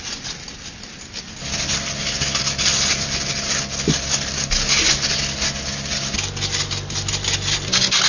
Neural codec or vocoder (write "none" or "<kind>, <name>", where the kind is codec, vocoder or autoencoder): none